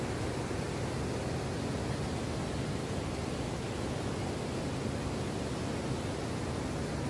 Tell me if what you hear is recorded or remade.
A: recorded